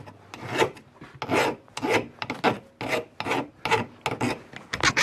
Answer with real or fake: real